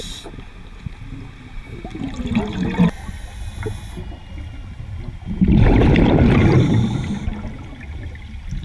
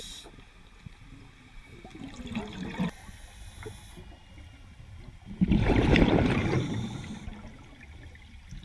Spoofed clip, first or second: second